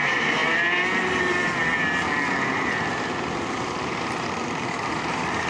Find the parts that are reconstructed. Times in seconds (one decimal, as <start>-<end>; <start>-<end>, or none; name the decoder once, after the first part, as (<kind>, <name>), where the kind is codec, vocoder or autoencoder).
0.0-0.4 (vocoder, BigVGAN v2); 3.5-5.5